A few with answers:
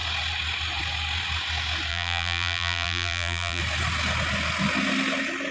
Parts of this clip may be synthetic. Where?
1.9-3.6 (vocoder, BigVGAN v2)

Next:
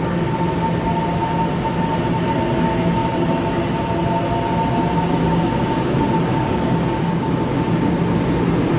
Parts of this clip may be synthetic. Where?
5.3-7.9 (codec, DAC)

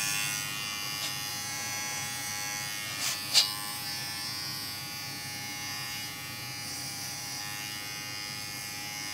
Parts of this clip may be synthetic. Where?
1.3-2.3 (vocoder, Vocos); 3.7-7.4

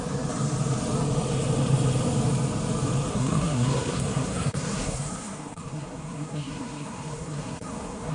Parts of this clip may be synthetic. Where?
3.1-8.1 (codec, SNAC)

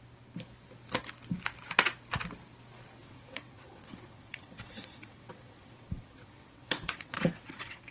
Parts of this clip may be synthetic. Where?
3.0-7.9 (vocoder, WaveNeXt)

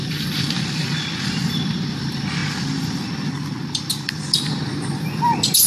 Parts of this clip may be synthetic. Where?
0.0-2.4 (vocoder, BigVGAN v2)